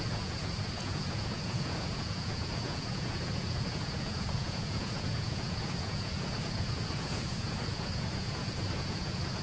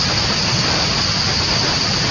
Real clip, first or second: second